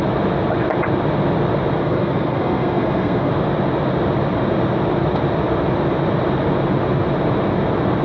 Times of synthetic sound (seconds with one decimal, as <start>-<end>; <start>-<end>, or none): 1.8-3.3